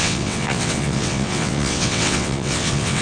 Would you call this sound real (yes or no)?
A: no